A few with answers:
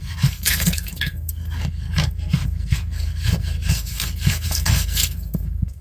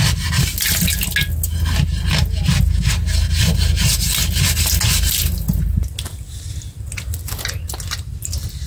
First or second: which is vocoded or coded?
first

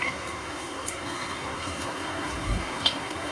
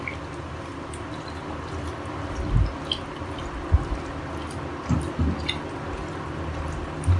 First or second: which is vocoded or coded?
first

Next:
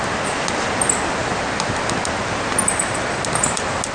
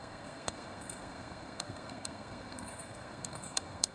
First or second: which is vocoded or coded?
second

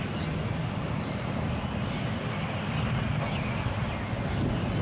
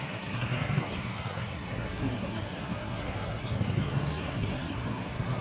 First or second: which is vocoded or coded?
second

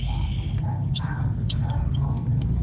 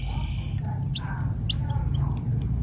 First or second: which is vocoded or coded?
first